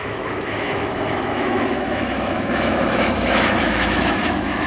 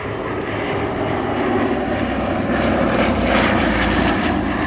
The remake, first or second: first